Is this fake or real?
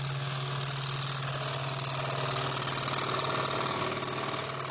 real